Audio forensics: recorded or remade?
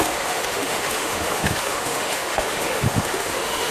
remade